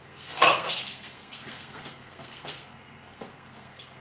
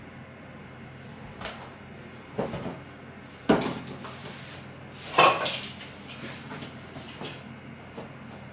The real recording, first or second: second